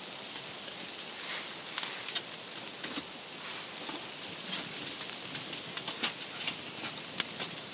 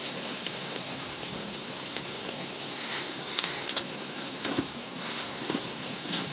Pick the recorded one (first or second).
first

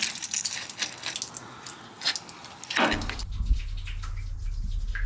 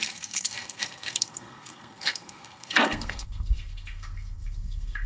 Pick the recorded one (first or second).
first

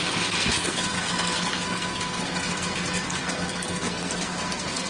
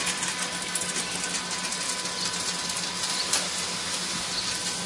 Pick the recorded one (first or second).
second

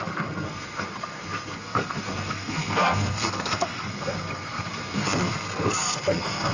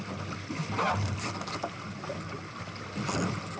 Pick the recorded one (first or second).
second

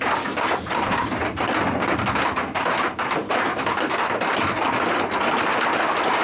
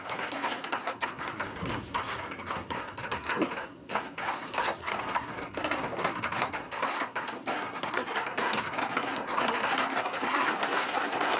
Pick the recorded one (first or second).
first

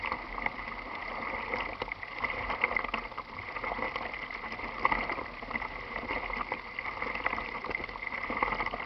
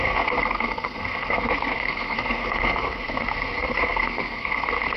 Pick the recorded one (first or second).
first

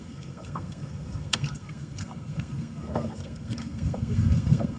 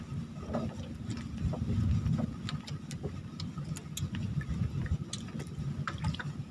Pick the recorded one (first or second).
second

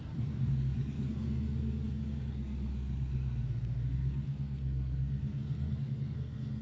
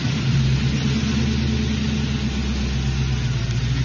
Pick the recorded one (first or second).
second